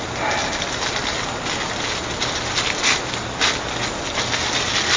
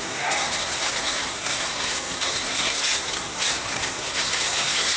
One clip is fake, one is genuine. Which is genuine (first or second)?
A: first